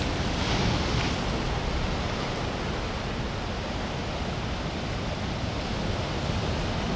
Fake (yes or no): no